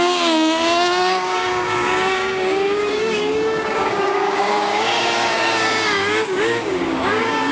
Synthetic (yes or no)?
yes